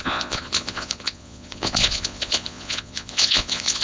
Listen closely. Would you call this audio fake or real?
fake